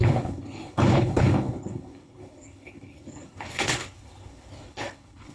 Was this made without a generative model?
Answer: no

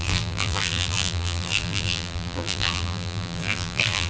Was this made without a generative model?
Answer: no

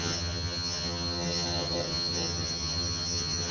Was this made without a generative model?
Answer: no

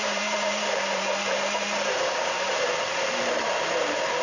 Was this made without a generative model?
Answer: no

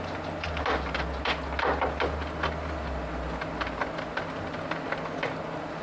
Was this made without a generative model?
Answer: yes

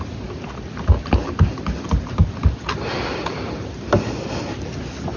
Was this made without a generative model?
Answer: yes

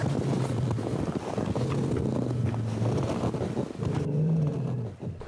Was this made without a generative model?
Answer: yes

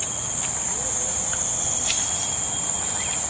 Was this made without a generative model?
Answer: yes